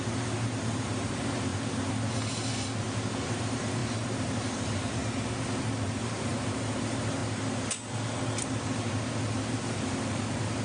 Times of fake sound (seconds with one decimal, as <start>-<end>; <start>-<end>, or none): 0.0-1.5; 3.2-5.0; 5.9-7.2; 9.3-10.6